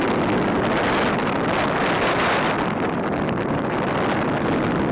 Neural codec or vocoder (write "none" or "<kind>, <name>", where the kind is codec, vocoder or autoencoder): none